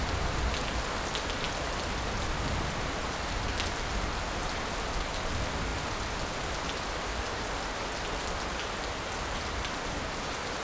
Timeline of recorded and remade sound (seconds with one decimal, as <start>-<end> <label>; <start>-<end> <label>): 0.0-10.6 recorded